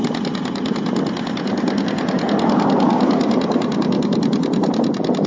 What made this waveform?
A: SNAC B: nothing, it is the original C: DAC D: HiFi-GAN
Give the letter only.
B